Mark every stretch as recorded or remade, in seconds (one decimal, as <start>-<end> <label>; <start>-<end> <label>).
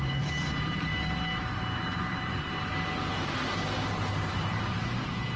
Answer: 0.0-0.9 remade; 0.9-4.1 recorded; 4.1-5.4 remade